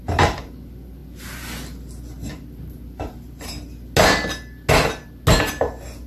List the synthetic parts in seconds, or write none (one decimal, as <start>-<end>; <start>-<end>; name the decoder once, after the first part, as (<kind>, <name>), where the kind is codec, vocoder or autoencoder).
none